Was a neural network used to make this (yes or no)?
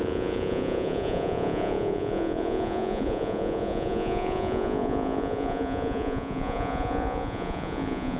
yes